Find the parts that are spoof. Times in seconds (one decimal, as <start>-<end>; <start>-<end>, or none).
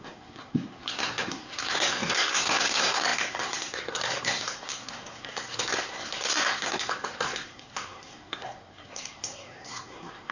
0.0-10.3